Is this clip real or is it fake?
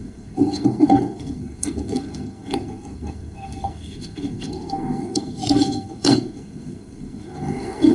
fake